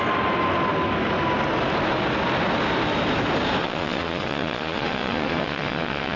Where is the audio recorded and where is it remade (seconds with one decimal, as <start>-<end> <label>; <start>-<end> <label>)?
0.0-3.6 recorded; 3.6-6.2 remade